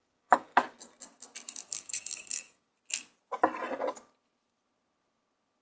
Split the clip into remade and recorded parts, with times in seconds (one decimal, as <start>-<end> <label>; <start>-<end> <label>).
0.0-0.5 remade; 0.5-1.7 recorded; 1.7-2.7 remade; 2.7-5.6 recorded